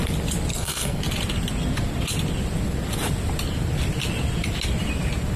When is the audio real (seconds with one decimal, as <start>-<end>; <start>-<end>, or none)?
0.0-0.5; 1.0-5.4